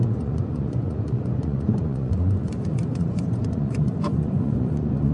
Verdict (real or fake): fake